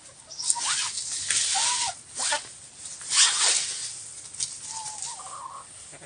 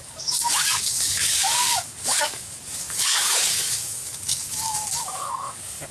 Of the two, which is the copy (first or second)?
second